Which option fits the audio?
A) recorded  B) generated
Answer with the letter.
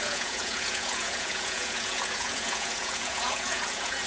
B